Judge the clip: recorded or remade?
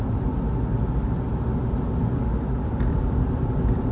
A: recorded